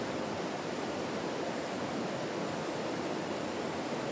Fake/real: real